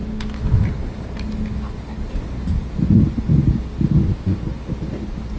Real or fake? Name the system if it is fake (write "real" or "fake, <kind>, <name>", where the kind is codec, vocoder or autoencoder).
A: real